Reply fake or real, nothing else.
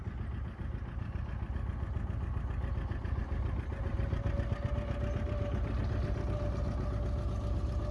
real